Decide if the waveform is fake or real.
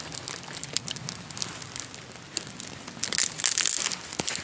real